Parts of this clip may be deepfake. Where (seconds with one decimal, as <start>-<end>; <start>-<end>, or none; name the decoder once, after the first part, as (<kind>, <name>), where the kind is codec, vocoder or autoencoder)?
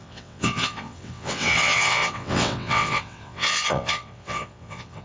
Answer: 0.0-5.0 (vocoder, WaveNeXt)